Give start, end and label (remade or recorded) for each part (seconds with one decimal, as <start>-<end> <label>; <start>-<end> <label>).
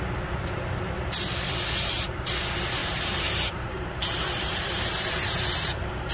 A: 0.0-2.8 recorded; 2.8-6.1 remade